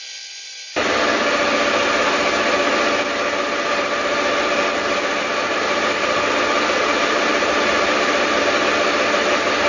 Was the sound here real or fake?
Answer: real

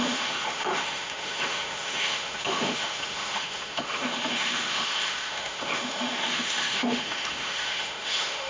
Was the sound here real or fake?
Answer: fake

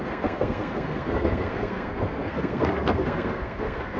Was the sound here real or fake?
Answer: fake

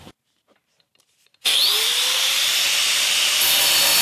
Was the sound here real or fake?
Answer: fake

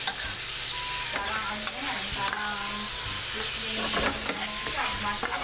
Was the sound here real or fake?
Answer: real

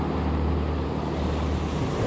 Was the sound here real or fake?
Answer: real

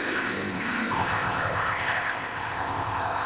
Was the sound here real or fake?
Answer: fake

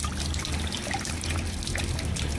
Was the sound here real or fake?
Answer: real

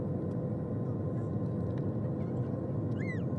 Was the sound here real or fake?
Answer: real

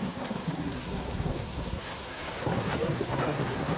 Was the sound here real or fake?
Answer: fake